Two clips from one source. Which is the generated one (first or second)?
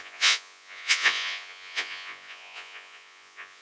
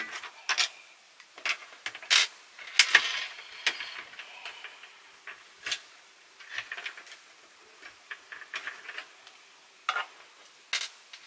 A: first